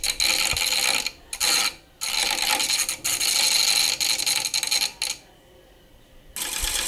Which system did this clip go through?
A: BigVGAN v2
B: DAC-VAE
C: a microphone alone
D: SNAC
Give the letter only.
C